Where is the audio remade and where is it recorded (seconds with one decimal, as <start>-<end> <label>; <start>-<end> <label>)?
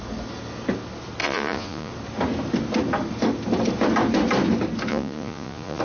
0.0-1.2 recorded; 1.2-1.9 remade; 1.9-4.9 recorded; 4.9-5.8 remade